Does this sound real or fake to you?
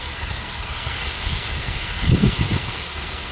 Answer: fake